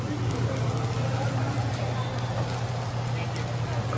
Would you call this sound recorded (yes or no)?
yes